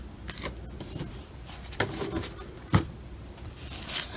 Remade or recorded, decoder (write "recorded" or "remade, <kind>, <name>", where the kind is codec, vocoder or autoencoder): recorded